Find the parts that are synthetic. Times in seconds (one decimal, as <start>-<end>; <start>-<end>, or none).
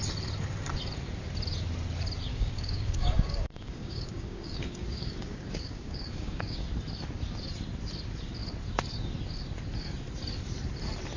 2.3-6.7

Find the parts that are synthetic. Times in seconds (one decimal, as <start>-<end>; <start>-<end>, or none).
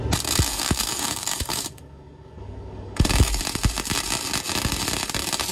0.5-3.4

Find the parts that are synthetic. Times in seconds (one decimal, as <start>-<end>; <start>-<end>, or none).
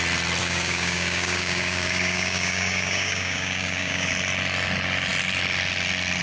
0.4-4.1